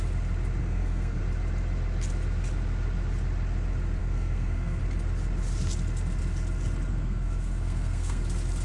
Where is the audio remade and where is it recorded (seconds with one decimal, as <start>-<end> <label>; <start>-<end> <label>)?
0.0-0.6 recorded; 0.6-1.2 remade; 1.2-4.0 recorded; 4.0-4.8 remade; 4.8-6.9 recorded; 6.9-8.2 remade; 8.2-8.6 recorded